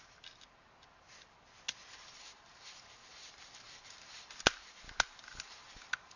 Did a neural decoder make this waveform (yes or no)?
no